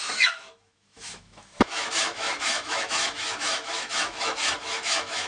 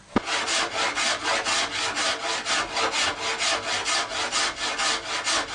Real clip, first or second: second